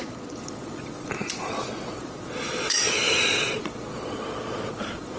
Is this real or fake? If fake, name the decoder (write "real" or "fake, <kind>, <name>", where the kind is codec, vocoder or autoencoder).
fake, vocoder, Vocos